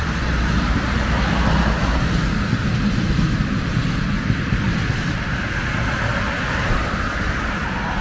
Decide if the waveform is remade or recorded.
recorded